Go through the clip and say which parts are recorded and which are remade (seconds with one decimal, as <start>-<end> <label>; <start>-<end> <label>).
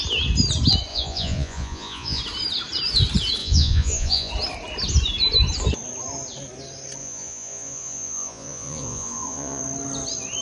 0.0-0.9 recorded; 0.9-2.2 remade; 2.2-3.4 recorded; 3.4-4.3 remade; 4.3-7.0 recorded; 7.0-9.6 remade; 9.6-10.4 recorded